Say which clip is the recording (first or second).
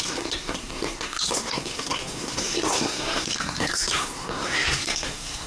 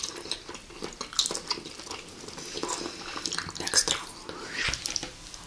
second